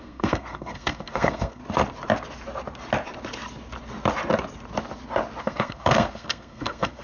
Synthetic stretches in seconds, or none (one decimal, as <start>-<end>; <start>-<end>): 0.0-1.6; 5.4-7.0